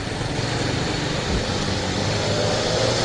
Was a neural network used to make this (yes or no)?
no